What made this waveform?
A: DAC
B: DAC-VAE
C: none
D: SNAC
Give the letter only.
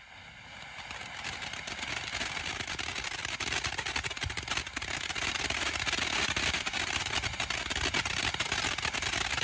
C